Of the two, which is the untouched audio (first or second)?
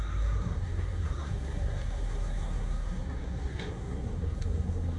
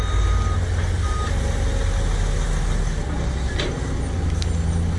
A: second